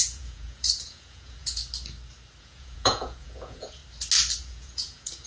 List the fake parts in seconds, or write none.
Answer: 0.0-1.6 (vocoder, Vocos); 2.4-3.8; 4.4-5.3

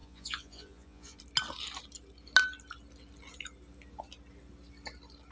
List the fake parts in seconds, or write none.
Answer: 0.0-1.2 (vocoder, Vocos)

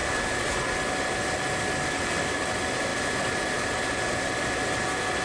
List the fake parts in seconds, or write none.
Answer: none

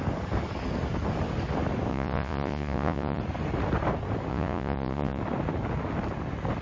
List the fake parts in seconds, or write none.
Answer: 1.9-3.2 (vocoder, Vocos); 4.3-5.2

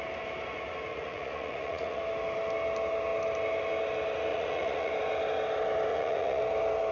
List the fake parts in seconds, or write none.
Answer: 0.9-2.0 (vocoder, Vocos); 4.3-4.9; 5.9-6.4

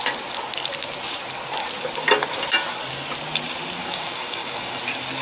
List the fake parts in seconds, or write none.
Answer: 3.8-4.8 (codec, DAC)

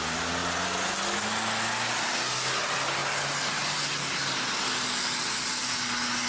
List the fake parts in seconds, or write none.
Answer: none

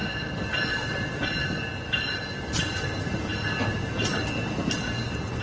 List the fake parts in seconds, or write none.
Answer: 2.4-3.3 (vocoder, BigVGAN v2); 3.8-4.2